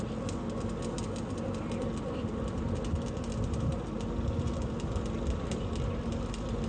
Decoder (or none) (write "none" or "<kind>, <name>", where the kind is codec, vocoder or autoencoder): none